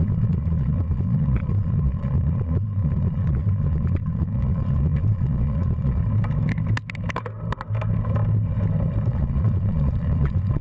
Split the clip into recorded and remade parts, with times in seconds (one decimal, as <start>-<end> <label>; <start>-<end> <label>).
0.0-6.0 remade; 6.0-9.1 recorded; 9.1-10.6 remade